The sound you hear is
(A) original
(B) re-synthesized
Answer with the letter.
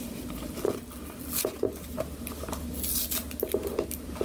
A